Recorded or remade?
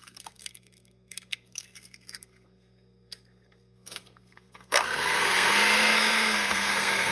remade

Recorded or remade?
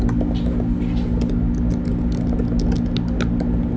recorded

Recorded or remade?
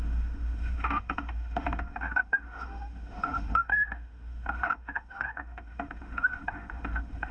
remade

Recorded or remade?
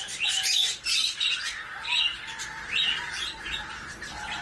recorded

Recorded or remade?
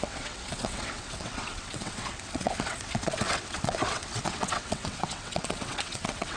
remade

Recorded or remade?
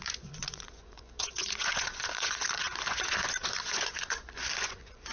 remade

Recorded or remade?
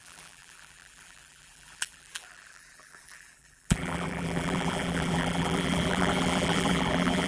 remade